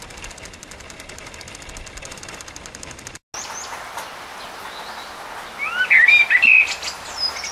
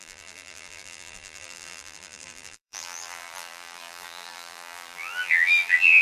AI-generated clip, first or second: second